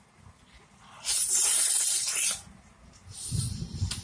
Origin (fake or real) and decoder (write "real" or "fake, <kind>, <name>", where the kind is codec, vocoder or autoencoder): real